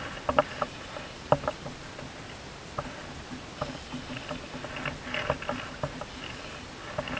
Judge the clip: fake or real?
real